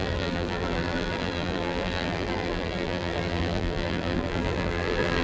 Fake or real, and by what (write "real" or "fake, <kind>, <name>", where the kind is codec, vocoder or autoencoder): fake, vocoder, BigVGAN v2